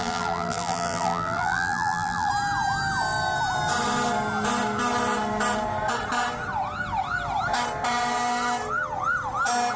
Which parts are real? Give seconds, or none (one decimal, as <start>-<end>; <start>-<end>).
2.3-9.8